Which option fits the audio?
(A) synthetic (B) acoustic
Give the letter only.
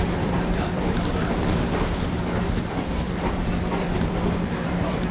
A